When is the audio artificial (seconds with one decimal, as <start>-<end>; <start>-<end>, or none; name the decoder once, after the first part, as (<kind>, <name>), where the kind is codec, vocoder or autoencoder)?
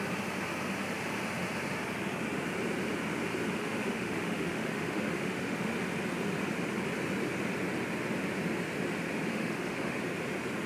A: 3.6-5.7 (autoencoder, DAC-VAE); 9.3-10.0